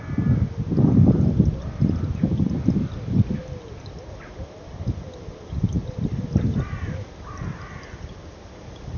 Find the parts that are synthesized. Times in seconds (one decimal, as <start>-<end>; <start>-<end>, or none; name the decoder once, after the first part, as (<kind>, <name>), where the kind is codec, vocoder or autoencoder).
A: none

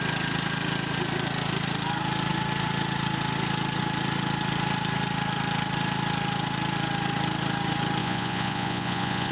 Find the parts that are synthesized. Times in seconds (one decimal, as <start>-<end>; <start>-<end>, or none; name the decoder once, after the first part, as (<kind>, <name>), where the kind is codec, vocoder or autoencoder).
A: 8.0-9.3 (vocoder, Vocos)

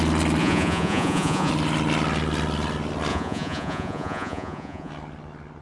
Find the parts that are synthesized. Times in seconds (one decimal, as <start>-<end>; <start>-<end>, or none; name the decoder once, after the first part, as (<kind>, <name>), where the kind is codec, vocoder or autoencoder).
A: 0.4-1.5 (vocoder, Vocos); 3.1-4.9

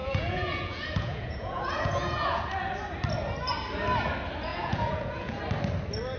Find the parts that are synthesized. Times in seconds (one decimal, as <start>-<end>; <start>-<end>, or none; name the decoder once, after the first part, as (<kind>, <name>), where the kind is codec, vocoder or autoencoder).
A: 0.0-2.4 (vocoder, Vocos); 4.5-5.4